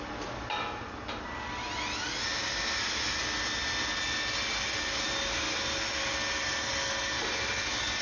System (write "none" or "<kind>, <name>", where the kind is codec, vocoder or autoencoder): none